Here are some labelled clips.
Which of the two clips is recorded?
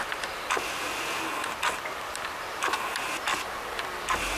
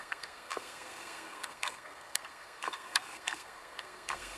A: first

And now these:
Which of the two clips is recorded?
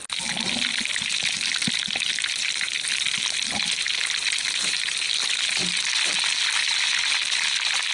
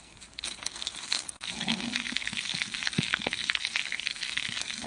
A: first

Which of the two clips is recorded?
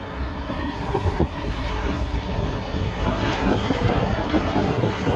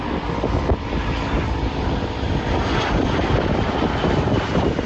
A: second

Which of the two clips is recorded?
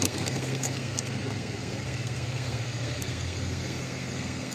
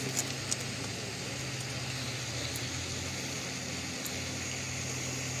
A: second